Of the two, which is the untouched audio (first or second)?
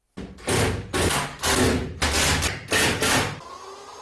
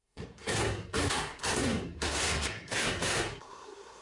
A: first